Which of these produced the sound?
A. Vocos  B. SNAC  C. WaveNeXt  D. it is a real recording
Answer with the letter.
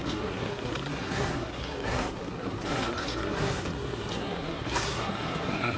B